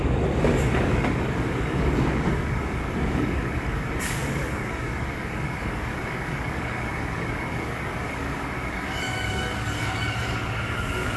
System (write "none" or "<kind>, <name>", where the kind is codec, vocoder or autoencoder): codec, DAC